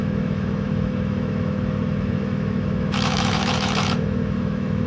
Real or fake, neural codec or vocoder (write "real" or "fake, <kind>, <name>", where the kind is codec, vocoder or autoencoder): fake, autoencoder, DAC-VAE